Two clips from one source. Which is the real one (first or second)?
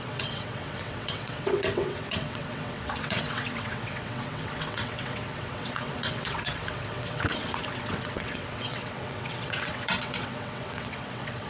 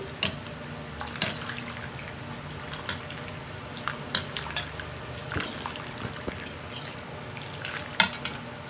second